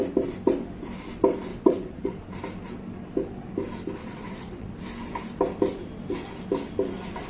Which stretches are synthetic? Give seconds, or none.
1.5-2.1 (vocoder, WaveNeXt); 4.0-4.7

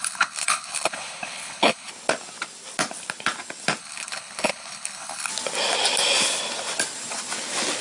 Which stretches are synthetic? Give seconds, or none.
0.0-1.9 (codec, HILCodec); 3.8-5.3

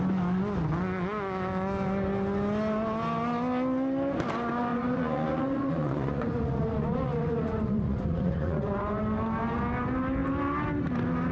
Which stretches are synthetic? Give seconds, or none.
4.7-9.0 (vocoder, Vocos)